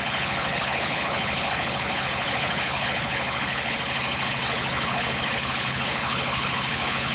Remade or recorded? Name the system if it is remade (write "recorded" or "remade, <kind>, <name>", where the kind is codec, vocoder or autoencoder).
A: remade, codec, HILCodec